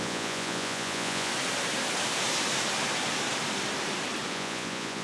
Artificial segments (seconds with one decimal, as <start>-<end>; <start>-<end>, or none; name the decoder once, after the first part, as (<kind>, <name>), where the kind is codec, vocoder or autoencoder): 0.0-1.3 (vocoder, Vocos); 4.3-5.0